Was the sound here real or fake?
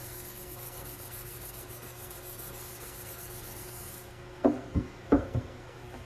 fake